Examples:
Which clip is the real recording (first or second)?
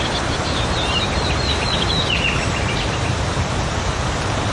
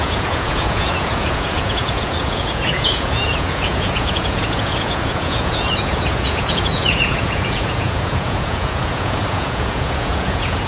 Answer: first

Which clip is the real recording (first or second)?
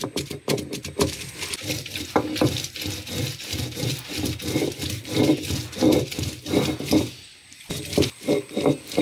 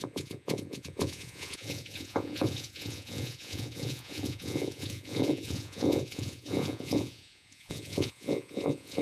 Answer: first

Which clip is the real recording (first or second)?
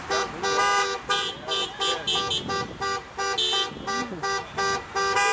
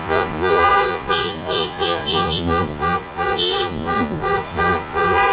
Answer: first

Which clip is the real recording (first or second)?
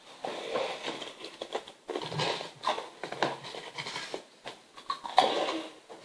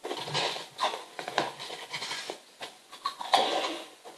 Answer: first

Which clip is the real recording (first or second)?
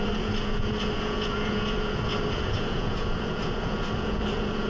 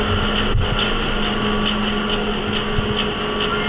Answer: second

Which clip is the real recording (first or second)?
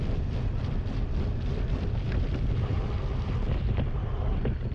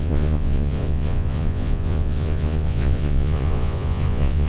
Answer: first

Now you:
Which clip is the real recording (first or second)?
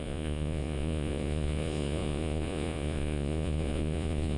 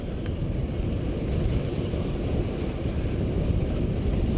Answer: second